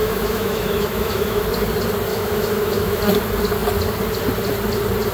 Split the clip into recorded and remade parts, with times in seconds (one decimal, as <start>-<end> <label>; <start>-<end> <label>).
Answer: 0.0-1.4 remade; 1.4-2.1 recorded; 2.1-3.0 remade; 3.0-5.1 recorded